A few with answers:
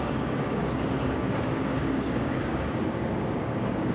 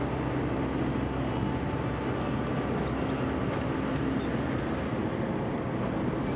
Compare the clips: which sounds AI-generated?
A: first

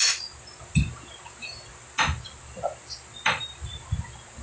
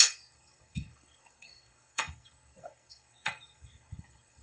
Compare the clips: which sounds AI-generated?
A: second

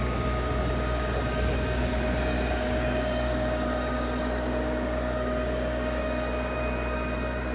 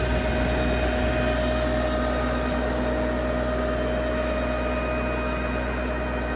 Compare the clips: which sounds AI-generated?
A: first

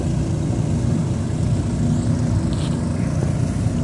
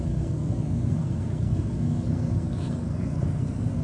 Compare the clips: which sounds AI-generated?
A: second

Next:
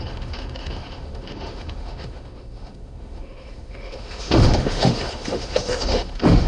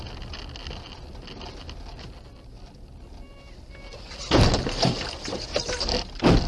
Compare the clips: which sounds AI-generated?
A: first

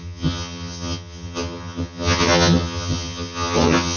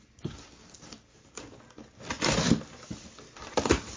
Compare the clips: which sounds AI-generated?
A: first